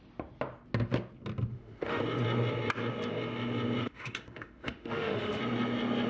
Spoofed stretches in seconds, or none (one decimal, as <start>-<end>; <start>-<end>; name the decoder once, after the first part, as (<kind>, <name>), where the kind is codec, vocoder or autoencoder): 1.5-2.0 (autoencoder, DAC-VAE); 3.8-5.4